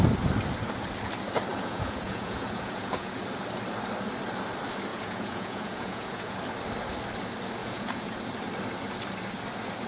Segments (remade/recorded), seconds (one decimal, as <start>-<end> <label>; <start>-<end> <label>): 0.0-1.5 recorded; 1.5-3.2 remade; 3.2-4.9 recorded; 4.9-6.4 remade; 6.4-7.6 recorded; 7.6-8.1 remade; 8.1-9.9 recorded